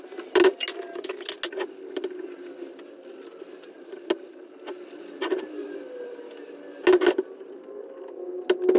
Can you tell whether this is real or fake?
real